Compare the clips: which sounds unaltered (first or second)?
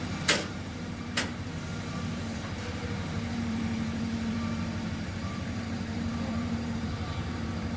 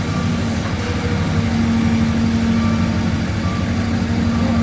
second